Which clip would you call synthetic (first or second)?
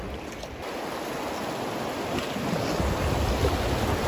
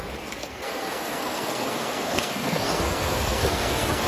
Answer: second